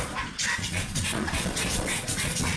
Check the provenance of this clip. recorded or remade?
remade